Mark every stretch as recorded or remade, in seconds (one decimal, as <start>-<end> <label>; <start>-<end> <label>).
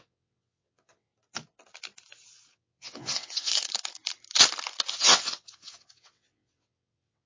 0.0-1.1 remade; 1.1-2.5 recorded; 2.5-3.5 remade; 3.5-4.9 recorded; 4.9-7.3 remade